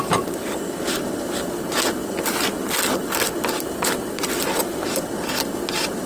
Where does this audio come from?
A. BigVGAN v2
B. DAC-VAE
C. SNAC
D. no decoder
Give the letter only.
D